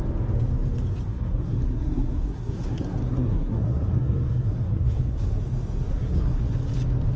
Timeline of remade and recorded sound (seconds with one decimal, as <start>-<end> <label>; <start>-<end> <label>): 0.0-1.1 recorded; 1.1-5.4 remade; 5.4-5.9 recorded; 5.9-6.4 remade; 6.4-7.2 recorded